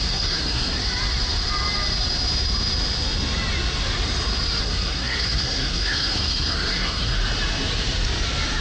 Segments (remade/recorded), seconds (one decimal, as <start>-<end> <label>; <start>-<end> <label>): 0.0-0.8 remade; 0.8-4.6 recorded; 4.6-7.2 remade; 7.2-8.6 recorded